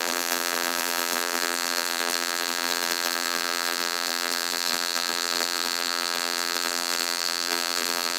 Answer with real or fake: fake